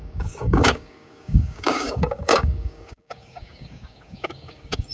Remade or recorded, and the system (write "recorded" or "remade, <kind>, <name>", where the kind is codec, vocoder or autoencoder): remade, codec, DAC